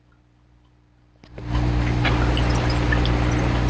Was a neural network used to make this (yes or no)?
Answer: no